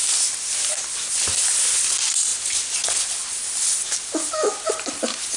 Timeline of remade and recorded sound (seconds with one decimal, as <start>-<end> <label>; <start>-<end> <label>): 0.0-5.4 recorded